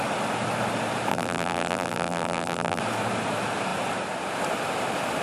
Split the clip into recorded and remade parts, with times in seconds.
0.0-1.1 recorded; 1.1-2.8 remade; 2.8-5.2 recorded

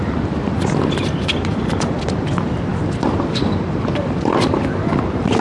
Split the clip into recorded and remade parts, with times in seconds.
0.0-5.4 recorded

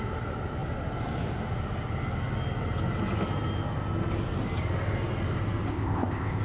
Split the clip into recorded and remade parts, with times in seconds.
0.0-5.7 recorded; 5.7-6.4 remade